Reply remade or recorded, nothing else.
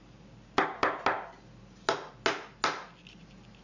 recorded